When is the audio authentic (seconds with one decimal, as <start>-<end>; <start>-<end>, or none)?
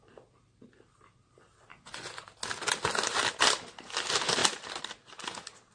0.0-1.7; 2.3-5.7